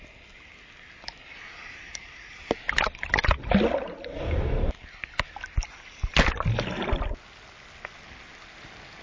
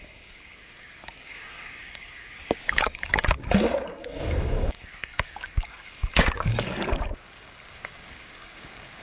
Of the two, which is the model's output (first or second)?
second